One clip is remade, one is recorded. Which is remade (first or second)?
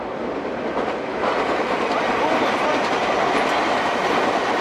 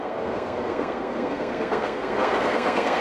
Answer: second